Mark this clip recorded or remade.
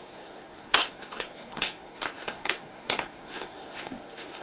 remade